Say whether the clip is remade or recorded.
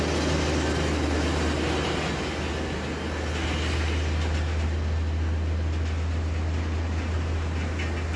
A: recorded